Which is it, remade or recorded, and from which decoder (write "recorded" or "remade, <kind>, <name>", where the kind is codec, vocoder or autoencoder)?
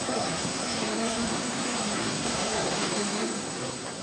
remade, codec, SNAC